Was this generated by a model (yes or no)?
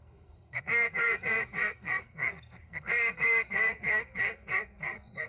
yes